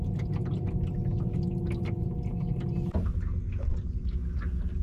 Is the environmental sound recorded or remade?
recorded